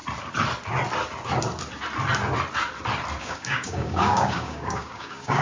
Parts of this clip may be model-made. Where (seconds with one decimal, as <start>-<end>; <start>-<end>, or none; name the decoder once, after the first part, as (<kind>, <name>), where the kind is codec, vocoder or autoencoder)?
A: 3.2-5.4 (codec, DAC)